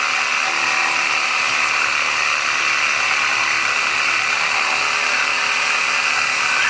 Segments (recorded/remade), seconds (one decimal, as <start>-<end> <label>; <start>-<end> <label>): 0.0-6.7 recorded